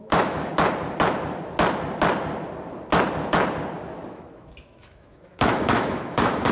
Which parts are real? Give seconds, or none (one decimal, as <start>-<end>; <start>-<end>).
0.5-4.1